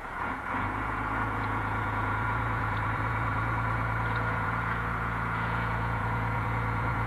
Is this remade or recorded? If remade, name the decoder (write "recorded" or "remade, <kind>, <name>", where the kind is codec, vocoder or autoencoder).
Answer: remade, vocoder, Vocos